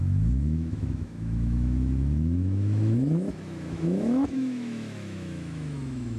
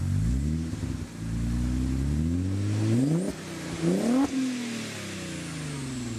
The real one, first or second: second